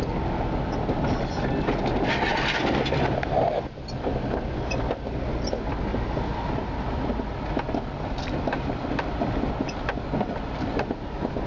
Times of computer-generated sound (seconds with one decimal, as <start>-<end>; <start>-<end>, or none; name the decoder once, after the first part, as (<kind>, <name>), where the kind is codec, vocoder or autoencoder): 2.3-4.1 (vocoder, BigVGAN v2); 5.9-9.5